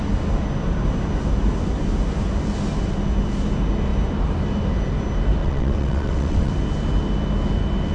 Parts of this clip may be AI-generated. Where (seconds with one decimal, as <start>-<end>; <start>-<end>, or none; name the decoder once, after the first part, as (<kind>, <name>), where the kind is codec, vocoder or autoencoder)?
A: 5.4-6.5 (vocoder, WaveNeXt)